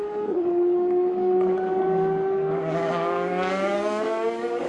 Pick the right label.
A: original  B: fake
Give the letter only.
B